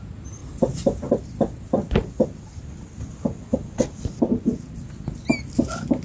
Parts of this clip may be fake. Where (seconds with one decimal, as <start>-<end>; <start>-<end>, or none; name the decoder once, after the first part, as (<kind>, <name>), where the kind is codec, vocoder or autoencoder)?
none